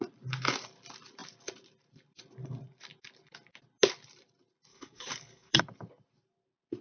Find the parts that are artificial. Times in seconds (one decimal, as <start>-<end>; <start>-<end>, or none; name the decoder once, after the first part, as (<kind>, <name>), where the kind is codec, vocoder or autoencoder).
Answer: 4.7-5.6 (codec, DAC)